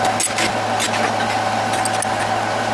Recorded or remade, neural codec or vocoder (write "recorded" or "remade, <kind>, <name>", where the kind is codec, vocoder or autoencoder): recorded